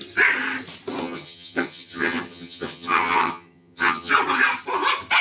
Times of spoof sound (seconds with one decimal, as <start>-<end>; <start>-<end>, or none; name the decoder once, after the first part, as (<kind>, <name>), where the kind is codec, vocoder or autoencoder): 1.0-4.1 (vocoder, HiFi-GAN)